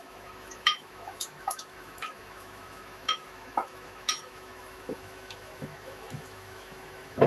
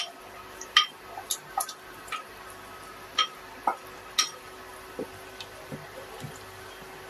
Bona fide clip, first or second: second